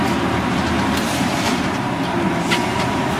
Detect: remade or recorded recorded